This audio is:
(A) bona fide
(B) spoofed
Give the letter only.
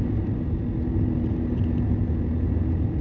A